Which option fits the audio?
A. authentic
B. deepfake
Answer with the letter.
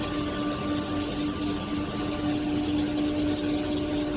A